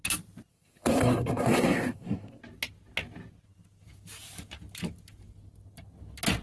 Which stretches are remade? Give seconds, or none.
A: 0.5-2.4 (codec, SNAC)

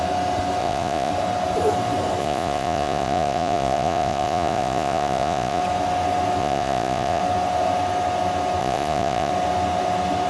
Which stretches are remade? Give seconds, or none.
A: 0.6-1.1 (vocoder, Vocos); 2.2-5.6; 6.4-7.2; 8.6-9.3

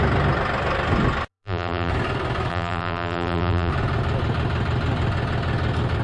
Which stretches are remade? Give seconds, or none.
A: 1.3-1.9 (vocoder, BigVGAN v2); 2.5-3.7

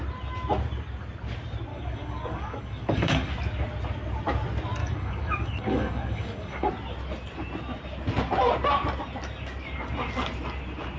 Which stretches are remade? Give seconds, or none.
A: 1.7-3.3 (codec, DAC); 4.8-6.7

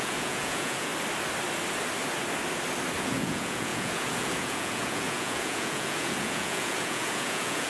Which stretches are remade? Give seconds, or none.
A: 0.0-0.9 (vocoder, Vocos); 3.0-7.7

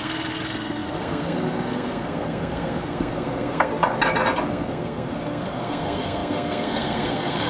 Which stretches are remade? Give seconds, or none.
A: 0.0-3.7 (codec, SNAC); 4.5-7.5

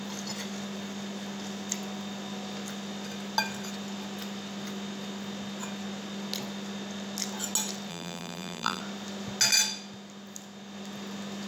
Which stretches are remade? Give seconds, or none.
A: 7.9-8.8 (vocoder, BigVGAN v2)

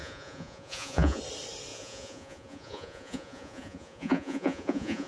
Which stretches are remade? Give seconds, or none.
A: 0.0-1.2 (vocoder, Vocos); 1.7-5.1